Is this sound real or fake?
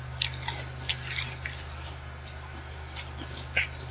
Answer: real